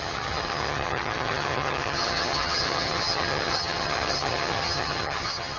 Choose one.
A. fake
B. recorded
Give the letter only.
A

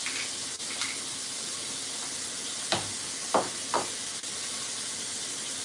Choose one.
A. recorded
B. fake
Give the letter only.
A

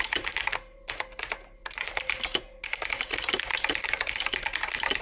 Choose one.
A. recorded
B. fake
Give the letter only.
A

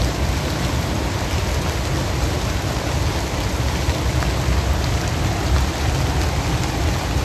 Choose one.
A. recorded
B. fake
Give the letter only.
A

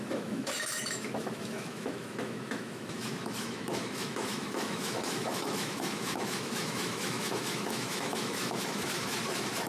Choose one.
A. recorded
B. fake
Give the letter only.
B